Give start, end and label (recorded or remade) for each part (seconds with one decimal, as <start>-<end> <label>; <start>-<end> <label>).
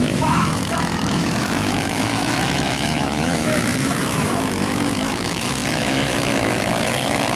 0.0-7.4 remade